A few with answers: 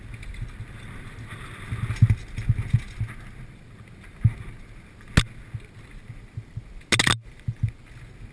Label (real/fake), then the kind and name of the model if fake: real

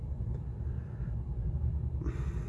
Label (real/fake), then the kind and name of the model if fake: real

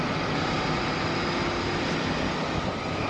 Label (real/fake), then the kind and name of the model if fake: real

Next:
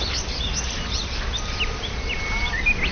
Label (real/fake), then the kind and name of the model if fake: real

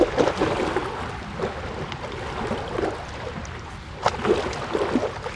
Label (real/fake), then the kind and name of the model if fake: real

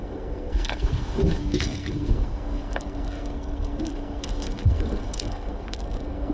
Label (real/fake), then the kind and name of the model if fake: fake, codec, SNAC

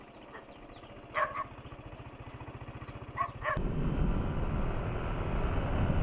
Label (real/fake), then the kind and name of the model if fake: real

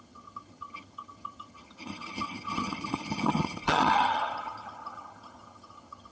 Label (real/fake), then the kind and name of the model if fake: fake, vocoder, HiFi-GAN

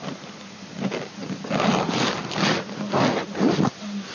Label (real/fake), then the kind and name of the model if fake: real